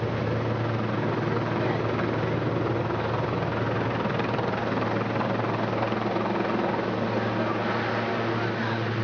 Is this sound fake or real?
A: real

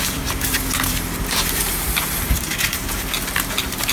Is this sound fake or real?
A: fake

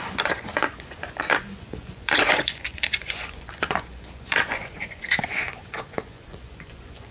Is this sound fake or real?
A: fake